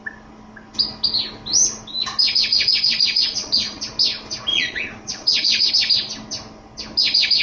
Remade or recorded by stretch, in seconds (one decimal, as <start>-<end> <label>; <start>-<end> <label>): 0.0-2.5 recorded; 2.5-3.8 remade; 3.8-4.5 recorded; 4.5-5.7 remade; 5.7-7.4 recorded